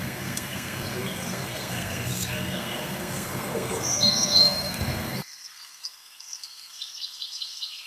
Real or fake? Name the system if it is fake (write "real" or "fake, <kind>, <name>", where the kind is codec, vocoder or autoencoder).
fake, codec, SNAC